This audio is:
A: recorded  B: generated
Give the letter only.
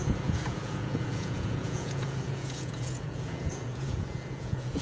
B